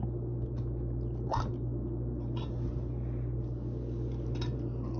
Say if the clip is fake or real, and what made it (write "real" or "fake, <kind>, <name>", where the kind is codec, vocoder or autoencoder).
real